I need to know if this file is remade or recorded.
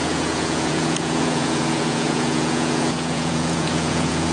remade